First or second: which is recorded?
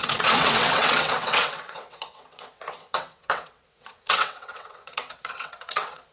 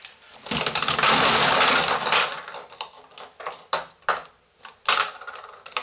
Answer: second